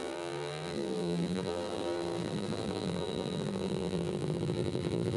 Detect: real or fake fake